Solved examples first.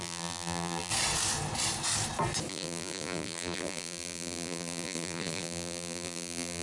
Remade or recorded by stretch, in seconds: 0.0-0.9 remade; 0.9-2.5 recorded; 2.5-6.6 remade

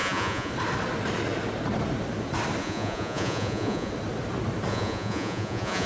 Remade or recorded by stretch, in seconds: 0.0-0.5 remade; 0.5-2.6 recorded; 2.6-3.9 remade; 3.9-4.7 recorded; 4.7-5.9 remade

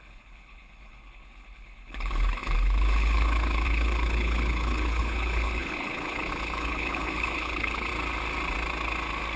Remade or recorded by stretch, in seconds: 0.0-7.9 remade; 7.9-9.4 recorded

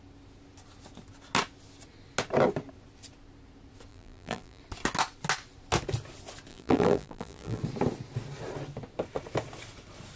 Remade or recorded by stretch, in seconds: 0.0-3.9 recorded; 3.9-4.6 remade; 4.6-6.5 recorded; 6.5-7.6 remade; 7.6-10.2 recorded

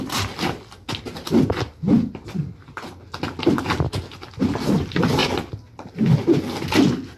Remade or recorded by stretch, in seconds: 0.0-7.2 recorded

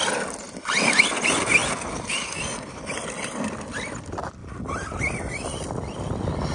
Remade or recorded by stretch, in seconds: 0.0-6.5 recorded